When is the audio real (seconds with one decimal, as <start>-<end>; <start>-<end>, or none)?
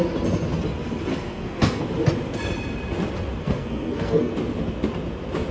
0.0-1.1; 1.8-3.4; 4.3-5.5